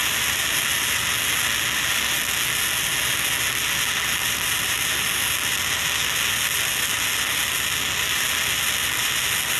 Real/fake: real